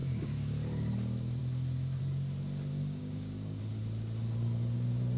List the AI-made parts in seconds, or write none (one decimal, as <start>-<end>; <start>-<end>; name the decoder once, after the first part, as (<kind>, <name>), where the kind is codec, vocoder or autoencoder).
0.0-0.9 (codec, DAC); 2.7-3.6